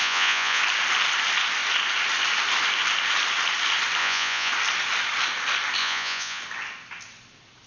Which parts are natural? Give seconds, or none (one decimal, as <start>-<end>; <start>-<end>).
0.6-4.0; 4.5-5.8; 6.4-7.7